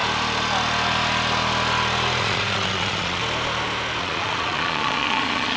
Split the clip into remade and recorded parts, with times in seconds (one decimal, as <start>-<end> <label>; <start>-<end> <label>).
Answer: 0.0-2.2 recorded; 2.2-3.2 remade; 3.2-4.0 recorded; 4.0-5.6 remade